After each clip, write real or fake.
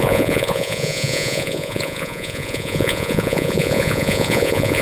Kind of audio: fake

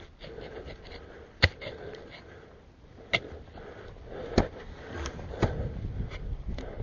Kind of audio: real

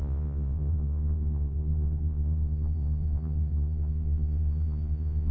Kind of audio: fake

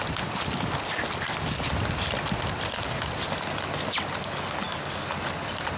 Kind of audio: real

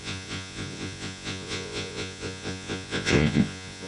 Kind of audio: fake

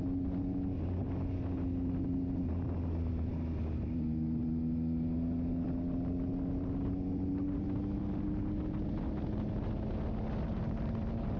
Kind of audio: real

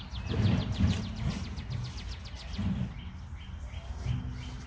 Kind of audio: real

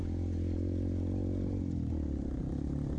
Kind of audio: real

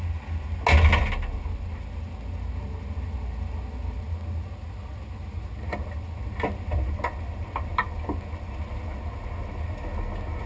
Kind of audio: real